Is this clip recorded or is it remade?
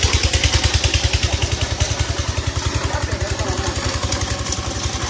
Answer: recorded